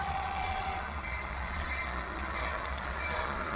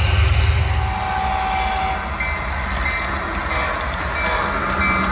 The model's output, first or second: first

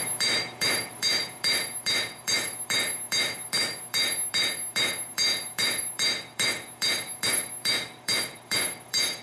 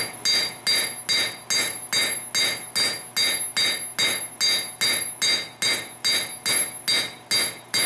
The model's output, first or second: first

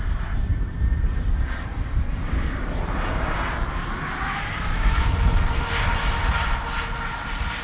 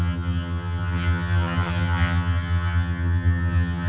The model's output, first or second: second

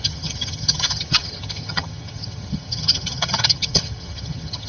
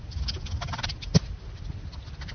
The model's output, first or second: first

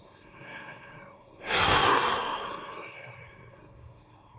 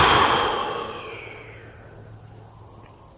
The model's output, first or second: first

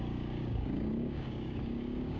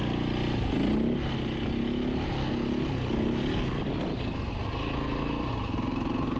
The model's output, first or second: first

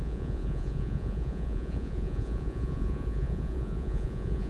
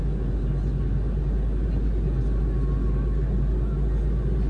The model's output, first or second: first